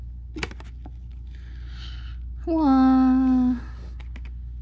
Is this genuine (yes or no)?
yes